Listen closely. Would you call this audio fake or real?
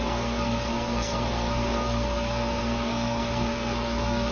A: fake